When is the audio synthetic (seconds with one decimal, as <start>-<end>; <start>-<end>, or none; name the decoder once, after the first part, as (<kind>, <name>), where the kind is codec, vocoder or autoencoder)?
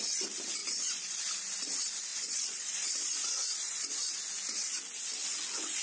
0.6-1.2 (vocoder, Vocos); 2.1-4.2